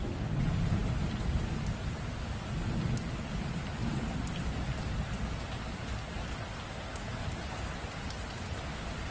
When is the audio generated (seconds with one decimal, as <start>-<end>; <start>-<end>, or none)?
none